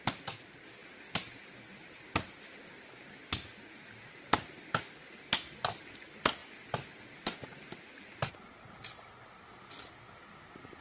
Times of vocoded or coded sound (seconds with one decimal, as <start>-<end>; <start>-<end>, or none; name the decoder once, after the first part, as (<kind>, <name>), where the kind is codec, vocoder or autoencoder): none